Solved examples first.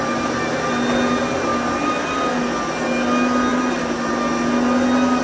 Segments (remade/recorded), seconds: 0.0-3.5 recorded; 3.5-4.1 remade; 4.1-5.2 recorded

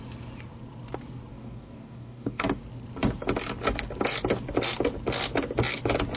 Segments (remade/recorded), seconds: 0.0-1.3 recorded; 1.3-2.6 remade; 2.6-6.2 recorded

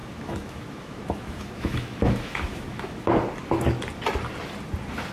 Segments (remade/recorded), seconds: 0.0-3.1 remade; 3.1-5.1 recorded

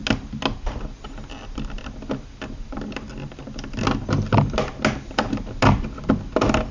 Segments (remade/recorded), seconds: 0.0-6.7 recorded

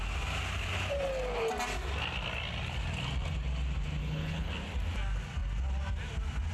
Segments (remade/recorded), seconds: 0.0-4.0 recorded; 4.0-4.5 remade; 4.5-6.5 recorded

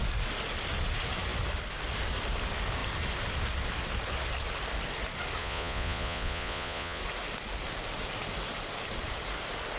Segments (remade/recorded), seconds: 0.0-5.4 recorded; 5.4-7.0 remade; 7.0-9.8 recorded